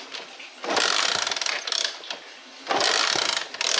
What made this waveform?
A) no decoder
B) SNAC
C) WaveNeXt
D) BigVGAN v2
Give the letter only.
A